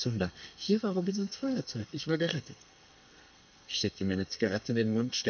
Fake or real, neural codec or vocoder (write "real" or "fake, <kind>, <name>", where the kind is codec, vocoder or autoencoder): fake, codec, SNAC